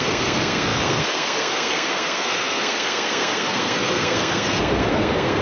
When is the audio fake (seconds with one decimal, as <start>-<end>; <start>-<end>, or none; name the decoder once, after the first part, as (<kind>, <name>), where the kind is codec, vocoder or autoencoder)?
0.0-5.4 (codec, SNAC)